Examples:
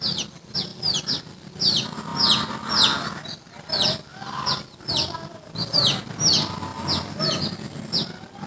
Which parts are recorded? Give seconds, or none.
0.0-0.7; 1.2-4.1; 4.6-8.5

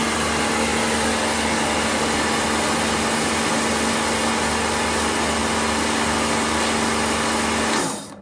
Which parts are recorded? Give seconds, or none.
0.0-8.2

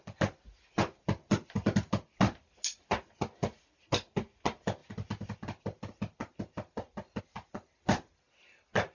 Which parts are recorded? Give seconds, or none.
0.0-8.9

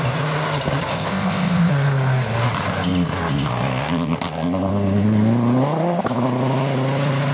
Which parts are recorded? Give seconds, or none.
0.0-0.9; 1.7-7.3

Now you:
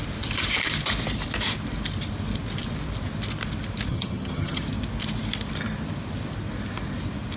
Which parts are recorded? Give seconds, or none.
0.0-3.9; 4.6-7.4

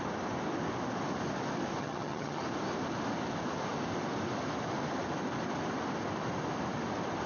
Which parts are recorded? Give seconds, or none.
0.0-1.8; 2.4-7.3

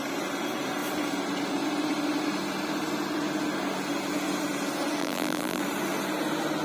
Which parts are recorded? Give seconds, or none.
0.0-5.0; 5.6-6.6

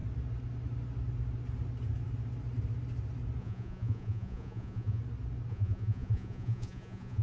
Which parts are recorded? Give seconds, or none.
0.0-3.4; 5.0-5.5